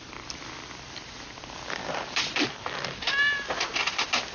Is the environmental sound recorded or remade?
recorded